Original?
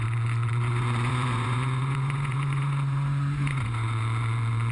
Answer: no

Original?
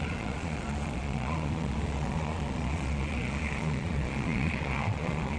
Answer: no